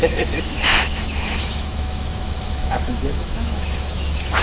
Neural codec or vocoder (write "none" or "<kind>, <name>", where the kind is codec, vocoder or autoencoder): autoencoder, DAC-VAE